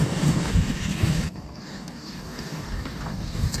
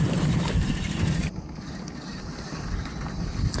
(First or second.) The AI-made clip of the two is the first